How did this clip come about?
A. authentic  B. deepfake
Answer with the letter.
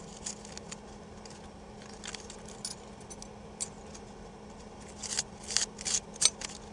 A